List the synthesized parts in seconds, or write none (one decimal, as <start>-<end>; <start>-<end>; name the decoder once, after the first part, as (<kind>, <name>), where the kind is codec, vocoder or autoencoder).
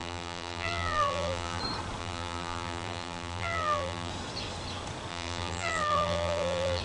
0.0-1.6 (vocoder, BigVGAN v2); 2.0-4.1; 5.1-6.8